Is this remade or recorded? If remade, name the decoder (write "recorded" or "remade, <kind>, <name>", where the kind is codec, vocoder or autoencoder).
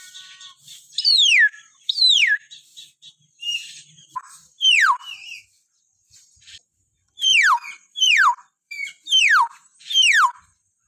remade, vocoder, BigVGAN v2